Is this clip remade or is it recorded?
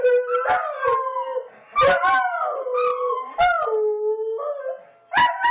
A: recorded